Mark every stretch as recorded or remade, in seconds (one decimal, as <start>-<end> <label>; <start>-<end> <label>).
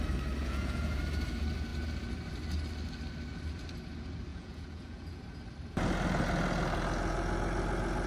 0.0-0.4 recorded; 0.4-1.0 remade; 1.0-4.3 recorded; 4.3-5.2 remade; 5.2-8.1 recorded